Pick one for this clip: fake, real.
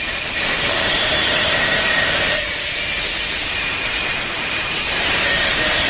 fake